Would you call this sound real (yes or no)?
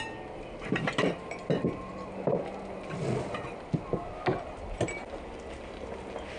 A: yes